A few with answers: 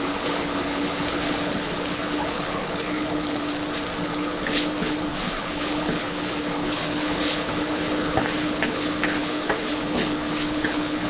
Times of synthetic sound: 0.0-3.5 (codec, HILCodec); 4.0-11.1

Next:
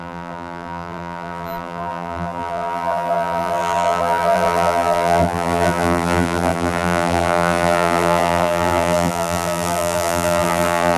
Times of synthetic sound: 0.0-11.0 (vocoder, BigVGAN v2)

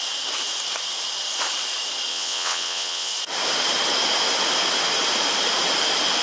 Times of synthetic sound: 2.1-3.1 (vocoder, WaveNeXt)

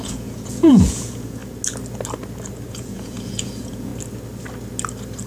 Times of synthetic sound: 0.0-1.4 (vocoder, Vocos); 2.7-3.9

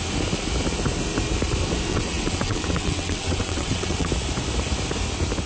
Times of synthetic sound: 1.9-4.1 (vocoder, WaveNeXt)